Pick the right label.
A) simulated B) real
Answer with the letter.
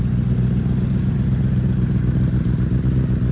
B